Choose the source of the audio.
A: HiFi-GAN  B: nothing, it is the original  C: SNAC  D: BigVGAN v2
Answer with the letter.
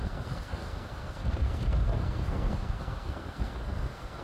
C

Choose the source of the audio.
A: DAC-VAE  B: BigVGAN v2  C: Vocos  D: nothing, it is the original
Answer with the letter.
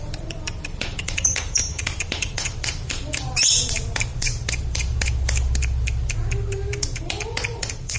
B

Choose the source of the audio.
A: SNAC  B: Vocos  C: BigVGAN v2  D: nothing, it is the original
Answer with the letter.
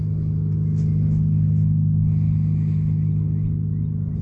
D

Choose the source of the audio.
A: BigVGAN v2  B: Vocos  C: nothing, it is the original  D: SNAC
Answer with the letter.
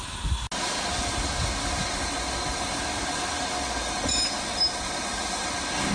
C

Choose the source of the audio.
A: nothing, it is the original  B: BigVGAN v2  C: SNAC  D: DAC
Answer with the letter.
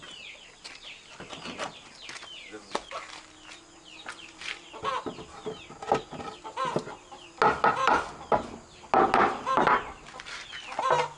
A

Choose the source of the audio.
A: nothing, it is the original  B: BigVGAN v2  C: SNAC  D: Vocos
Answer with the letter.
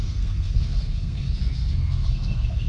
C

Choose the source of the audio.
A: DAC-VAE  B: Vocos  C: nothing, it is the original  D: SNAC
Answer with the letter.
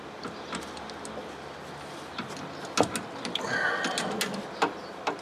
C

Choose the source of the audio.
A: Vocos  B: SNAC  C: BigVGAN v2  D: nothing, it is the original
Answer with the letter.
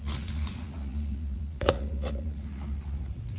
A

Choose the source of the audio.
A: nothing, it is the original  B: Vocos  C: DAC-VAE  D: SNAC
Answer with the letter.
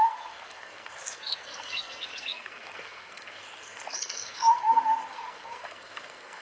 D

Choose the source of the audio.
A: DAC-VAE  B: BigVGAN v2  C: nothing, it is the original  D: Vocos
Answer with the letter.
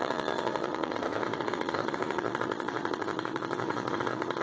D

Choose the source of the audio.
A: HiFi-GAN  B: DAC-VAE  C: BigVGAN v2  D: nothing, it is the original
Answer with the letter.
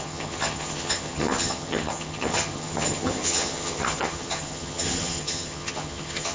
A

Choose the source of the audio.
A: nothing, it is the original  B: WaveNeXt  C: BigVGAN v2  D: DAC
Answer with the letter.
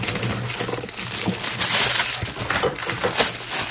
A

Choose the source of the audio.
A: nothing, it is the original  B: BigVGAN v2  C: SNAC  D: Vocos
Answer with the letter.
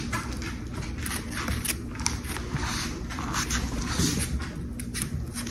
B